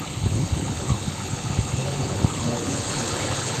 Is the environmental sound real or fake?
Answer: fake